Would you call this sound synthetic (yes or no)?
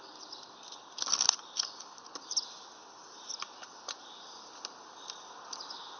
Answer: no